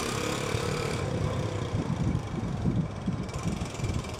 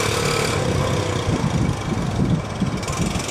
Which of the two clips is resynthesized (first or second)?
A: first